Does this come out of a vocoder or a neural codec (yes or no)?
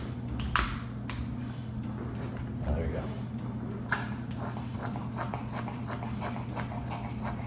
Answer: no